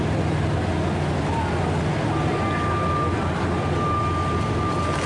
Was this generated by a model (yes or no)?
no